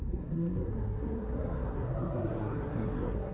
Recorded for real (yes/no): no